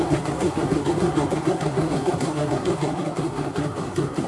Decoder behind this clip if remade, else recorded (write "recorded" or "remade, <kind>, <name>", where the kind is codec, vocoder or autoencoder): remade, codec, SNAC